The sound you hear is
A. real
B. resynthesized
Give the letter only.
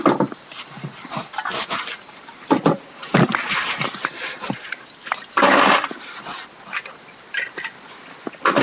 A